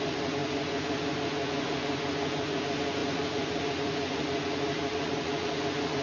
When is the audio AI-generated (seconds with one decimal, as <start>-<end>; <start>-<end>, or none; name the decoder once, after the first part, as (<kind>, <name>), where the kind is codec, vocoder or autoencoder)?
0.0-6.0 (vocoder, Vocos)